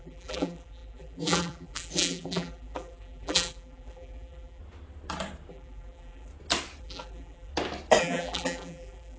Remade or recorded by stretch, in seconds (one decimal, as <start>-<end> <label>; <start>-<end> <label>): 0.0-4.6 remade; 4.6-5.5 recorded; 5.5-6.3 remade; 6.3-6.8 recorded; 6.8-7.5 remade; 7.5-8.0 recorded; 8.0-9.2 remade